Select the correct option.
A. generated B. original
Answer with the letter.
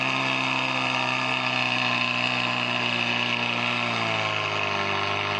B